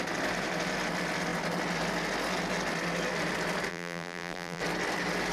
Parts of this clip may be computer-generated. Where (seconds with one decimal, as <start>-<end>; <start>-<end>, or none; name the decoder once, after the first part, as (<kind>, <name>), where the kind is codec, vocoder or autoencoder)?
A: 3.7-4.6 (vocoder, BigVGAN v2)